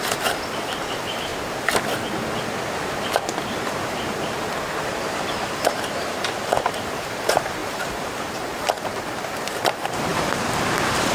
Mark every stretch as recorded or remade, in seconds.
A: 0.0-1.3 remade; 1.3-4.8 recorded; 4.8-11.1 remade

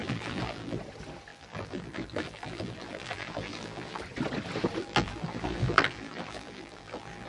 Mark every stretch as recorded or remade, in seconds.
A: 0.0-0.8 remade; 0.8-1.3 recorded; 1.3-4.0 remade; 4.0-4.8 recorded; 4.8-7.3 remade

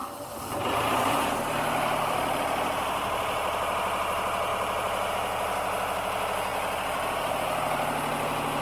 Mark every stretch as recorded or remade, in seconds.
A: 0.0-2.4 remade; 2.4-4.5 recorded; 4.5-5.1 remade; 5.1-8.6 recorded

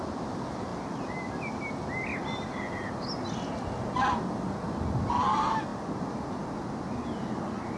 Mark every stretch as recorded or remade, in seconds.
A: 0.0-5.7 recorded; 5.7-6.7 remade; 6.7-7.8 recorded

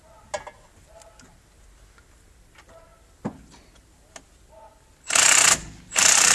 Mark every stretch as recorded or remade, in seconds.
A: 0.0-6.3 recorded

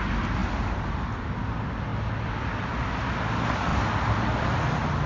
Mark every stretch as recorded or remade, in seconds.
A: 0.0-0.4 recorded; 0.4-1.1 remade; 1.1-1.9 recorded; 1.9-2.4 remade; 2.4-3.7 recorded; 3.7-4.4 remade; 4.4-5.1 recorded

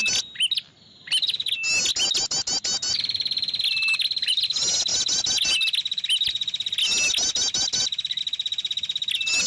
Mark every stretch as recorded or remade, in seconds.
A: 0.0-9.5 recorded

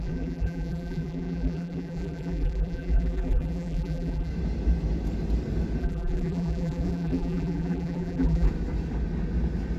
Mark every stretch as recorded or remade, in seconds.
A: 0.0-4.3 remade; 4.3-5.8 recorded; 5.8-8.5 remade; 8.5-9.8 recorded